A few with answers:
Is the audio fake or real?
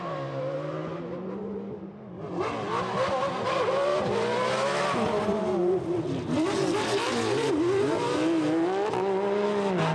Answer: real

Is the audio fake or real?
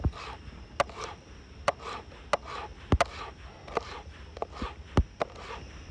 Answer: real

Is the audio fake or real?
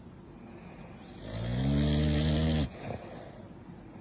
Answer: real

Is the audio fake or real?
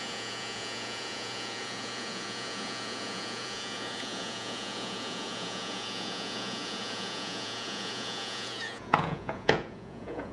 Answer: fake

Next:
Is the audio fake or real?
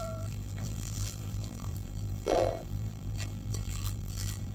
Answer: fake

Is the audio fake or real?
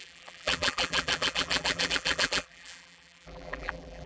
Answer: fake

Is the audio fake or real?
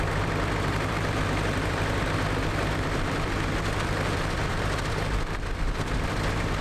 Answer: fake